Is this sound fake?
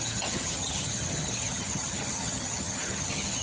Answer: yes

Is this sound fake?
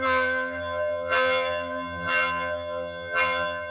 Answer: yes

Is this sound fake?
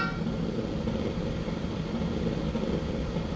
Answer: no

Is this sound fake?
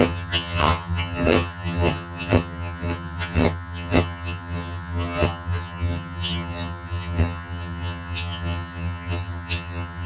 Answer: yes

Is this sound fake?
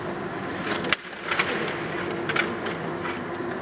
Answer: no